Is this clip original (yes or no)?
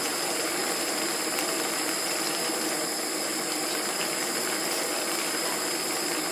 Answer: no